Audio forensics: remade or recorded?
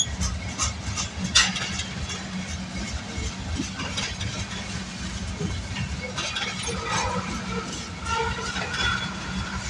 recorded